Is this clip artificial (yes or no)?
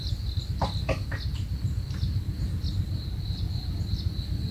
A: no